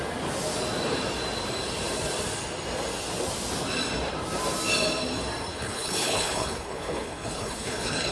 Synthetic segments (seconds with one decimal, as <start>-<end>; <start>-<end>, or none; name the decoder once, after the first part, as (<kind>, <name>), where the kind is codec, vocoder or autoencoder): 5.5-8.1 (codec, HILCodec)